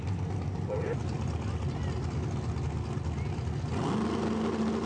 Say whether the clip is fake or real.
real